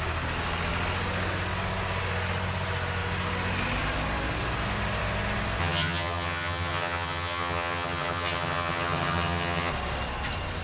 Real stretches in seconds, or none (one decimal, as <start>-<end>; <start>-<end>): 0.0-5.6; 9.7-10.6